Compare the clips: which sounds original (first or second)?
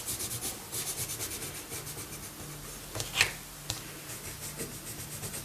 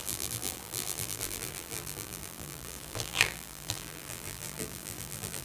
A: first